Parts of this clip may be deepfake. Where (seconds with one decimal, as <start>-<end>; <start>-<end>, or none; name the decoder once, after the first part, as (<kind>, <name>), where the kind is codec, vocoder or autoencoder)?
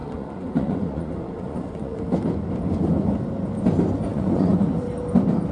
0.0-2.0 (vocoder, Vocos); 4.1-4.7